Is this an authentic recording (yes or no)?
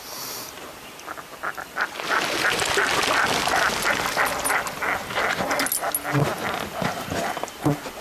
yes